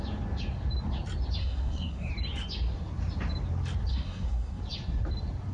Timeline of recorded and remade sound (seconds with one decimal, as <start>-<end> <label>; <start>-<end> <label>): 0.0-1.4 recorded; 1.4-2.1 remade; 2.1-3.9 recorded; 3.9-4.6 remade; 4.6-5.5 recorded